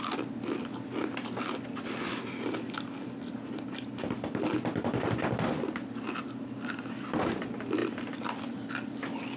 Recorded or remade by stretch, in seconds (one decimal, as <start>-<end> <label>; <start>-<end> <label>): 0.0-9.4 recorded